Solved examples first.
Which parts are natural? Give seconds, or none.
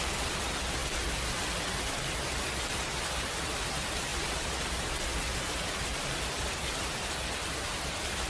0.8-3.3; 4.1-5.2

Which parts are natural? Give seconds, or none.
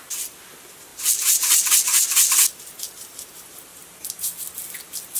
0.0-3.7; 4.3-5.2